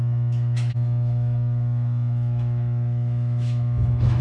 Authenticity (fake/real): fake